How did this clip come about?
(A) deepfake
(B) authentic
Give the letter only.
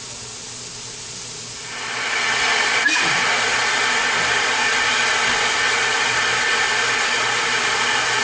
B